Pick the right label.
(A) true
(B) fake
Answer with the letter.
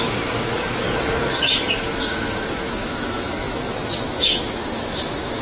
B